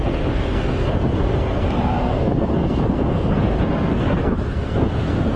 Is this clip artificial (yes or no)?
yes